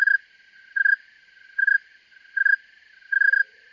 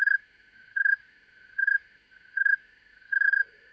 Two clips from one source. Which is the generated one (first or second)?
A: second